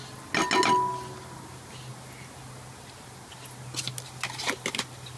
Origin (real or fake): real